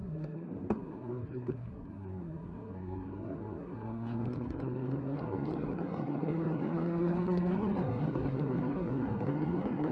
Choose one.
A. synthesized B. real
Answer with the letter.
A